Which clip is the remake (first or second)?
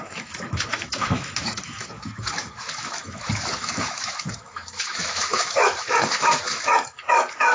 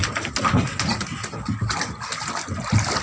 first